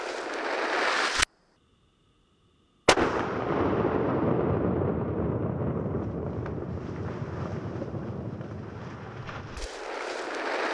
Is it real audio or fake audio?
real